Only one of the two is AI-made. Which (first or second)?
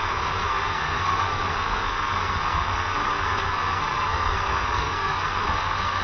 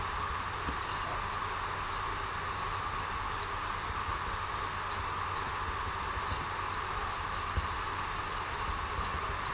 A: first